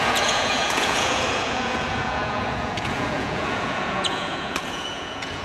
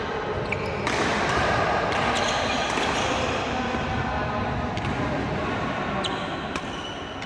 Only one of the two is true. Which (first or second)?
second